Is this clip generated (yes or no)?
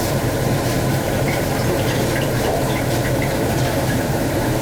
yes